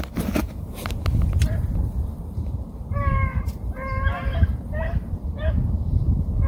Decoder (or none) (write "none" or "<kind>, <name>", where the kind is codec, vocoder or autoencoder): vocoder, BigVGAN v2